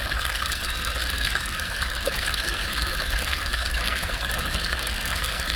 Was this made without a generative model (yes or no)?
no